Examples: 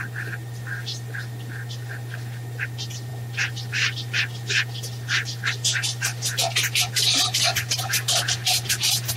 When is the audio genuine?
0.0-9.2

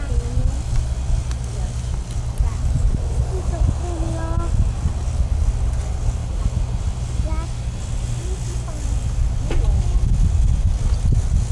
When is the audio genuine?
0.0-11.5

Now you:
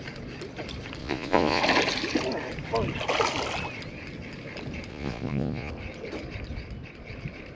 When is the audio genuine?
0.0-1.0; 1.6-4.9; 5.7-7.5